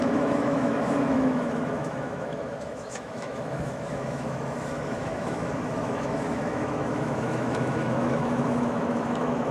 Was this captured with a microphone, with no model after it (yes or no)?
no